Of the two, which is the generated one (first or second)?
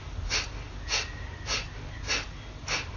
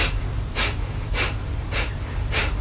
second